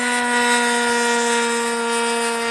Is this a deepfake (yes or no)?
no